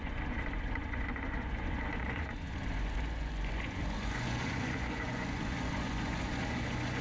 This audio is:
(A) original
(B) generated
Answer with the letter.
B